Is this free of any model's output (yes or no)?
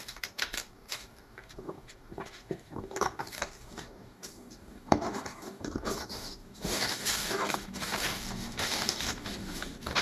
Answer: no